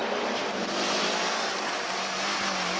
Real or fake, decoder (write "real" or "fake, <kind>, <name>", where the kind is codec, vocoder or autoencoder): real